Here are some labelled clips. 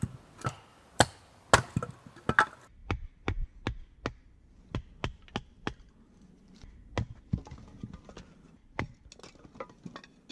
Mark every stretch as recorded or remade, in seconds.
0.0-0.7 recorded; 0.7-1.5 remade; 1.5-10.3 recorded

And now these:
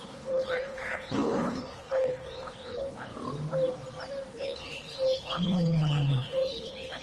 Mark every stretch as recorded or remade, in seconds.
0.0-3.1 remade; 3.1-4.3 recorded; 4.3-7.0 remade

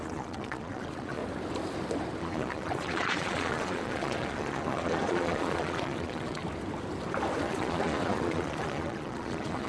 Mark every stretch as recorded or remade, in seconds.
0.0-1.2 remade; 1.2-2.2 recorded; 2.2-6.4 remade; 6.4-7.4 recorded; 7.4-9.7 remade

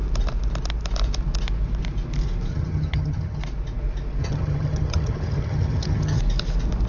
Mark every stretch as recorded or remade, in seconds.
0.0-2.5 recorded; 2.5-3.4 remade; 3.4-4.2 recorded; 4.2-6.2 remade; 6.2-6.9 recorded